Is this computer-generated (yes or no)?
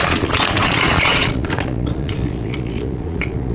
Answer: yes